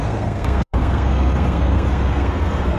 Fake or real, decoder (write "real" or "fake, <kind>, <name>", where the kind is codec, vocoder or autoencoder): fake, codec, SNAC